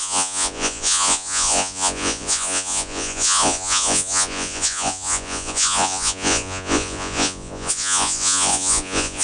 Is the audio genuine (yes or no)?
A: no